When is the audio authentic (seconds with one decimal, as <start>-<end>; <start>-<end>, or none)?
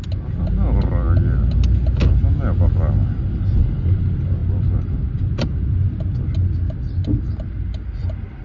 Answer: 0.0-8.4